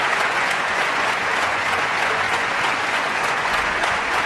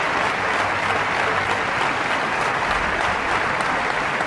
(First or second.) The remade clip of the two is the first